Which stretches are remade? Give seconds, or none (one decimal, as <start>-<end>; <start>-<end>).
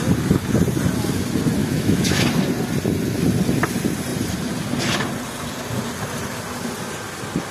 1.6-2.2